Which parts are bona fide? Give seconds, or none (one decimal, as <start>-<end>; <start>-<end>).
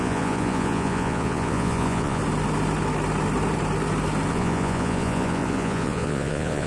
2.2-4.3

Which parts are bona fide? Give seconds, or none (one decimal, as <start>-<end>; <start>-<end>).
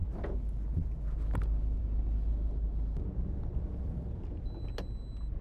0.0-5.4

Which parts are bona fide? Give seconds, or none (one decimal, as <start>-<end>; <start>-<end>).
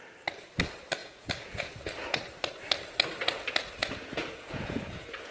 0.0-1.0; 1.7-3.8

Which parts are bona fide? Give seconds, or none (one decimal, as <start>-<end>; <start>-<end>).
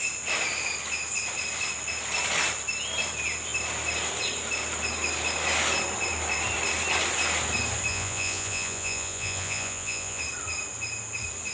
0.0-7.9; 10.2-11.5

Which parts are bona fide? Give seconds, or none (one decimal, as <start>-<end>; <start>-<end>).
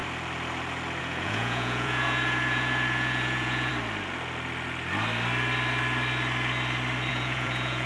0.0-1.0; 3.7-7.1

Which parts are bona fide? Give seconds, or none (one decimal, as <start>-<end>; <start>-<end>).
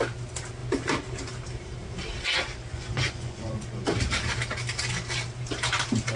0.0-2.7; 3.8-6.2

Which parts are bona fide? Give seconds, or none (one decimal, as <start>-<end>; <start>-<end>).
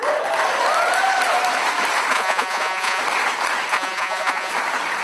0.0-2.1; 3.0-3.7; 4.5-5.0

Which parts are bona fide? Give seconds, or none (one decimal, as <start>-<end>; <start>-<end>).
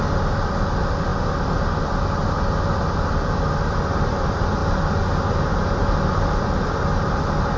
0.0-7.6